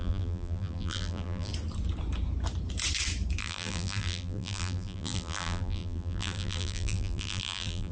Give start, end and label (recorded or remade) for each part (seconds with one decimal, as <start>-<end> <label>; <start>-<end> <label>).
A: 0.0-1.5 remade; 1.5-3.4 recorded; 3.4-7.9 remade